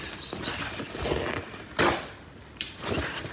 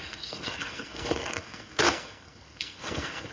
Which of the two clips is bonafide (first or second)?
first